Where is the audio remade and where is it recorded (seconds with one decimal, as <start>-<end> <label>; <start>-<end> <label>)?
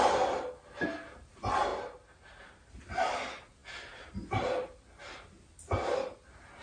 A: 0.0-6.6 recorded